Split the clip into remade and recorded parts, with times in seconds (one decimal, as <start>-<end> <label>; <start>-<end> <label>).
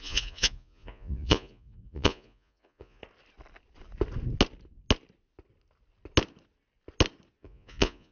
0.0-3.0 remade; 3.0-7.4 recorded; 7.4-8.1 remade